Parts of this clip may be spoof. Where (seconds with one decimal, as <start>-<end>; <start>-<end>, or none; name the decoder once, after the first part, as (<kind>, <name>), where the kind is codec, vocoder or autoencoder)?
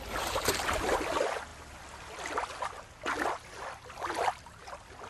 none